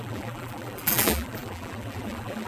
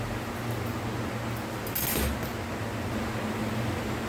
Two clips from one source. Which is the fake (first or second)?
first